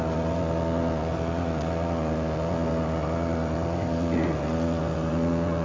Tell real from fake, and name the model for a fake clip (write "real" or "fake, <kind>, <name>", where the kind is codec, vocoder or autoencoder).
fake, vocoder, Vocos